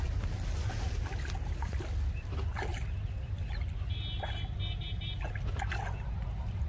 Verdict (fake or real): real